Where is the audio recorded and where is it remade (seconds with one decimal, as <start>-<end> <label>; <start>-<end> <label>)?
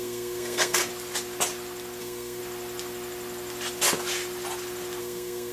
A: 0.0-0.8 remade; 0.8-2.0 recorded; 2.0-2.4 remade; 2.4-5.0 recorded; 5.0-5.5 remade